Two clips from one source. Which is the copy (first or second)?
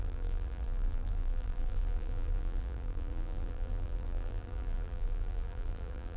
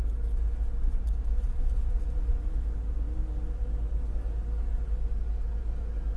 first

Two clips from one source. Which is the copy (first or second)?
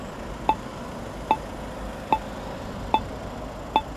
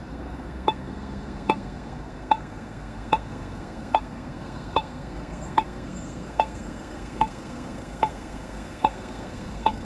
second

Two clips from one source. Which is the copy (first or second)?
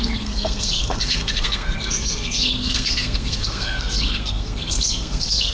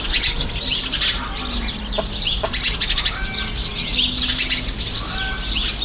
first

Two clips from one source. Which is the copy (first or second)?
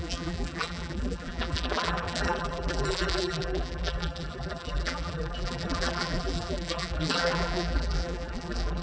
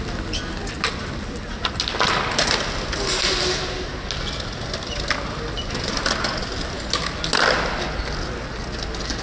first